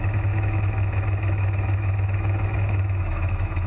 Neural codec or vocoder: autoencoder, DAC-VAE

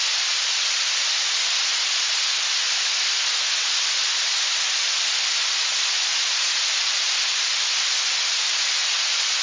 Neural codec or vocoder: none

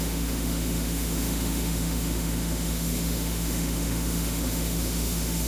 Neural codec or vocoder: autoencoder, DAC-VAE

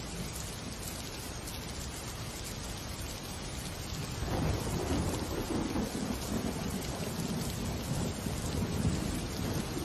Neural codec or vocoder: none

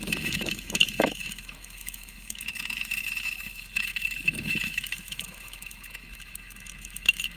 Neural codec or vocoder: autoencoder, DAC-VAE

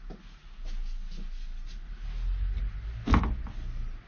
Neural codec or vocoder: none